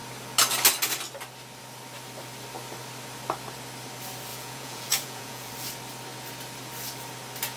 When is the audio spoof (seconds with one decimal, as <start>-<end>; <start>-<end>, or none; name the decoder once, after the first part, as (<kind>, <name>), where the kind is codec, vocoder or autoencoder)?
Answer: 4.3-5.5 (vocoder, Vocos)